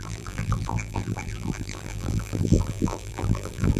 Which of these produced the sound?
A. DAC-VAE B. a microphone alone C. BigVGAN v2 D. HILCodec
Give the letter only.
C